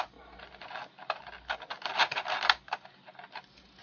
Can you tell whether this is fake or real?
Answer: real